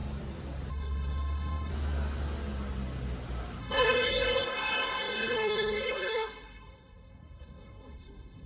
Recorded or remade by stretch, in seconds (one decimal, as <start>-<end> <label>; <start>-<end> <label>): 0.0-0.7 recorded; 0.7-1.7 remade; 1.7-3.6 recorded; 3.6-8.5 remade